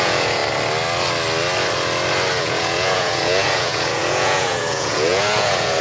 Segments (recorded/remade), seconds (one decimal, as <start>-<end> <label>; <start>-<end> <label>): 0.0-0.4 remade; 0.4-2.4 recorded; 2.4-5.8 remade